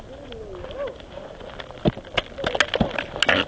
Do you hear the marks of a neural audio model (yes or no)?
no